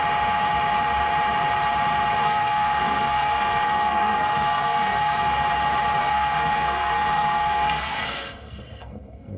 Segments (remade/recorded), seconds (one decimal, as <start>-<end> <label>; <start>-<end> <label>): 0.0-2.2 recorded; 2.2-5.4 remade; 5.4-6.0 recorded; 6.0-9.4 remade